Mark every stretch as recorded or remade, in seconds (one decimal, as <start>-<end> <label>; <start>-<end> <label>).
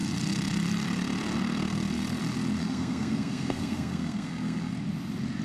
0.0-2.6 recorded; 2.6-4.7 remade; 4.7-5.4 recorded